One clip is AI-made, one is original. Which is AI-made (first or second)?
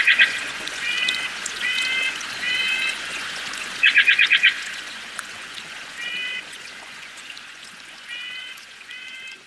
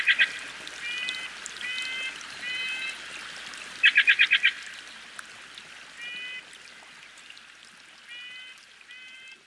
first